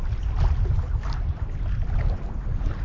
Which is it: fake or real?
real